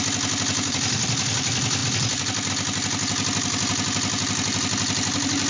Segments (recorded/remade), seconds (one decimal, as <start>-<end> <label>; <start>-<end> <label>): 0.0-5.5 recorded